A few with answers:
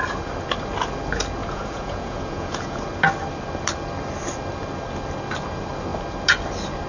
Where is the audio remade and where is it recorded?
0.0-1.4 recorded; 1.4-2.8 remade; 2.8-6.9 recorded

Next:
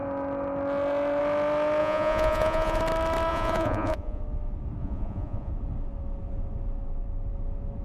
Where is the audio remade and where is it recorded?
0.0-1.8 recorded; 1.8-2.8 remade; 2.8-3.3 recorded; 3.3-4.2 remade; 4.2-4.8 recorded; 4.8-5.5 remade; 5.5-7.8 recorded